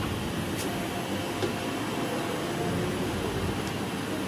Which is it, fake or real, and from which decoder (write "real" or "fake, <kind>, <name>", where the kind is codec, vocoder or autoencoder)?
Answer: real